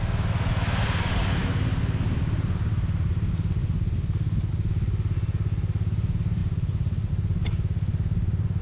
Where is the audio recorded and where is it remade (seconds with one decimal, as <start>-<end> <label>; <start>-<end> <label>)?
0.0-8.6 recorded